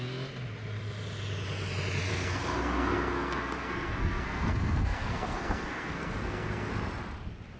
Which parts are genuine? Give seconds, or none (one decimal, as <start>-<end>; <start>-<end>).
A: 0.0-2.1; 6.7-7.6